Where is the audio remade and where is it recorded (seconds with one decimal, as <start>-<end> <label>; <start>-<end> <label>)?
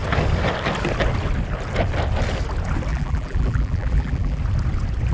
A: 0.0-2.9 recorded; 2.9-4.4 remade; 4.4-5.1 recorded